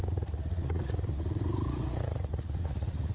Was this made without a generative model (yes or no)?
no